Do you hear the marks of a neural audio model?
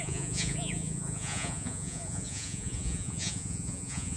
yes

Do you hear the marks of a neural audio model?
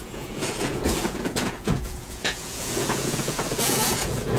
yes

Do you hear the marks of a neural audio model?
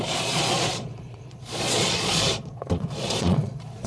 yes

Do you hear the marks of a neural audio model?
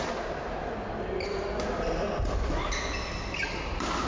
no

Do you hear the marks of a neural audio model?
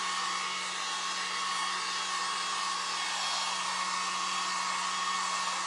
no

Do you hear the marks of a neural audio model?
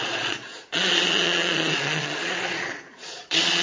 yes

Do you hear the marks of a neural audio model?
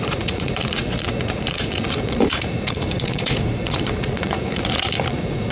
yes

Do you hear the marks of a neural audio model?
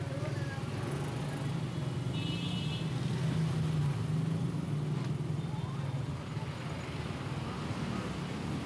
no